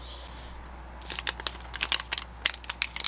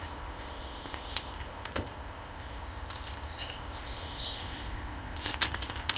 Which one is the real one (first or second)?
first